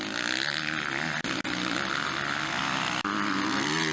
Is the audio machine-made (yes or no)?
no